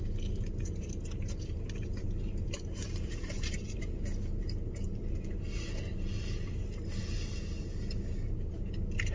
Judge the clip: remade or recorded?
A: remade